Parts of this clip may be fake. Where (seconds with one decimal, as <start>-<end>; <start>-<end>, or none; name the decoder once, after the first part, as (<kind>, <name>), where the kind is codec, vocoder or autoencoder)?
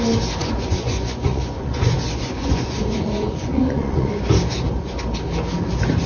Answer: 0.4-4.1 (vocoder, Vocos)